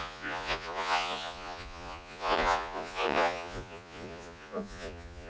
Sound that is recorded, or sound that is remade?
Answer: remade